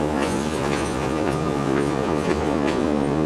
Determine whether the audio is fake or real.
fake